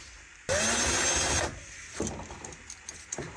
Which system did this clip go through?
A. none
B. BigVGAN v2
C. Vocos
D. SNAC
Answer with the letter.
A